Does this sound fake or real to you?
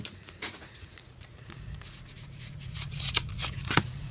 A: fake